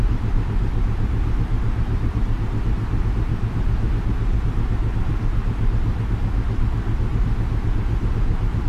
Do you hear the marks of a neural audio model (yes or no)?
no